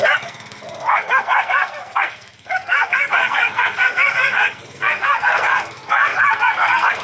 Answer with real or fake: fake